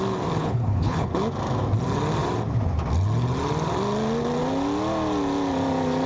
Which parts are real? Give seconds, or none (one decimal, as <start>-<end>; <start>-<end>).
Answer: 0.0-0.4; 1.1-6.1